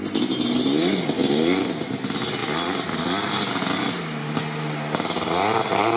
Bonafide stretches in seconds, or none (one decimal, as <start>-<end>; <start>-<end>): 0.0-6.0